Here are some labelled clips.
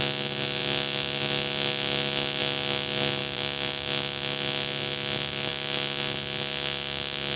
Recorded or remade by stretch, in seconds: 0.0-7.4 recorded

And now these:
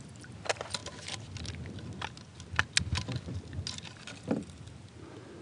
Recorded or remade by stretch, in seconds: 0.0-5.4 recorded

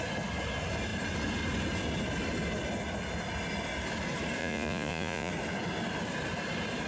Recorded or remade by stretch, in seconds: 0.0-4.4 recorded; 4.4-5.3 remade; 5.3-6.9 recorded

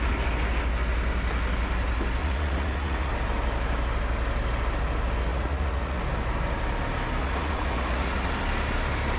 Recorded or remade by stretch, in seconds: 0.0-2.2 recorded; 2.2-3.1 remade; 3.1-5.3 recorded; 5.3-6.0 remade; 6.0-7.2 recorded; 7.2-8.3 remade; 8.3-9.2 recorded

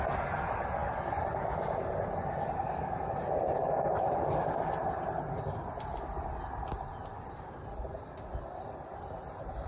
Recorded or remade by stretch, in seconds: 0.0-9.7 recorded

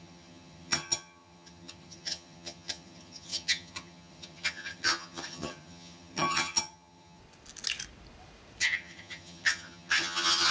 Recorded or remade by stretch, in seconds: 0.0-7.2 remade; 7.2-8.6 recorded; 8.6-10.5 remade